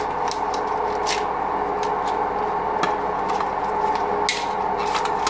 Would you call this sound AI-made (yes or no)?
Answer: no